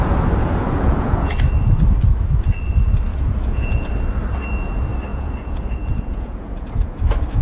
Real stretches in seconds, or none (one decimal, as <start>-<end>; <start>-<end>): 0.0-0.4; 1.4-3.1; 3.9-5.1; 7.0-7.4